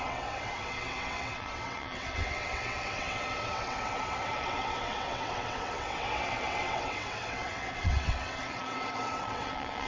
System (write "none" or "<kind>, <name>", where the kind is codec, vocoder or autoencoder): vocoder, WaveNeXt